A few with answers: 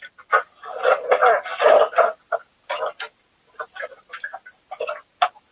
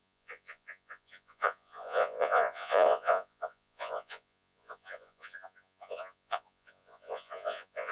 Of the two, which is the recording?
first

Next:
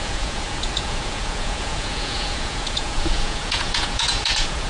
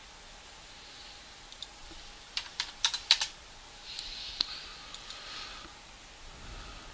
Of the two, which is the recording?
second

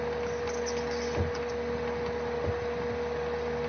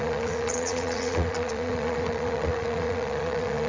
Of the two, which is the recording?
first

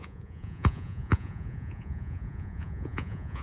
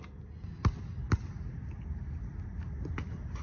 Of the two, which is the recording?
second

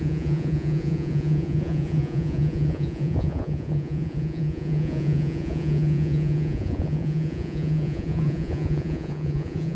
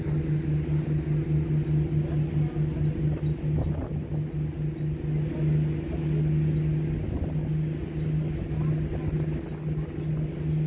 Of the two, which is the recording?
second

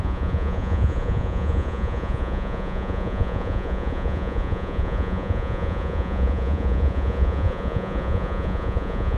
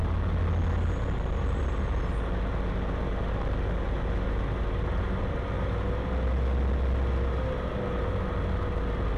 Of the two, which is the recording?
second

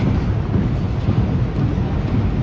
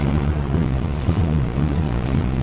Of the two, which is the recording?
first